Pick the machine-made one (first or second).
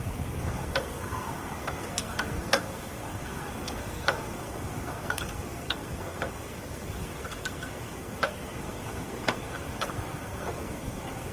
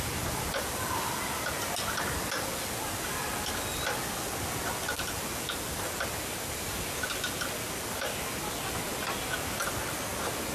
first